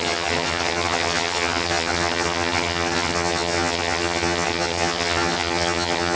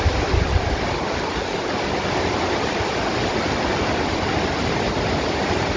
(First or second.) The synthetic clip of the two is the first